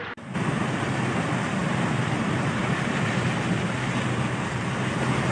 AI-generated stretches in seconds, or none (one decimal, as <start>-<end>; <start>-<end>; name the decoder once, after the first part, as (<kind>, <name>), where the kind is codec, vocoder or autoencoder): 1.6-2.6 (vocoder, BigVGAN v2)